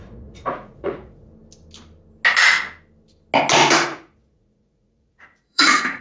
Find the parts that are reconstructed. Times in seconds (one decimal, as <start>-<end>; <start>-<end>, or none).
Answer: 0.0-1.3; 3.7-6.0